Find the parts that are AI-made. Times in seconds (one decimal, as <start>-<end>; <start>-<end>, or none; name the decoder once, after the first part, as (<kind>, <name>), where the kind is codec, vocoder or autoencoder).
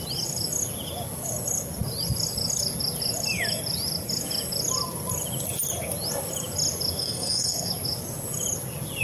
7.0-7.7 (codec, SNAC)